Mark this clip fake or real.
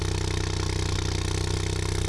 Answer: real